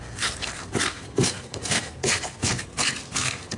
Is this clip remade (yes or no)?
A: yes